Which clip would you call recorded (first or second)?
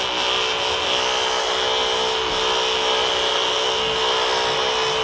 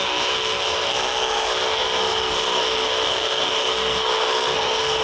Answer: first